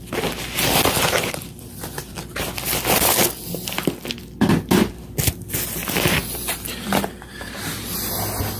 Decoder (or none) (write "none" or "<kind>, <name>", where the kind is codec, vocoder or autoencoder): none